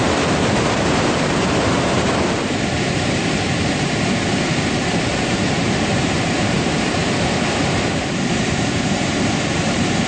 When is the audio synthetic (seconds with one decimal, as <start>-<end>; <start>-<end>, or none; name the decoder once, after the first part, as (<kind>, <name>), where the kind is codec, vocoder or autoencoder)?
0.0-7.0 (vocoder, BigVGAN v2); 8.0-10.1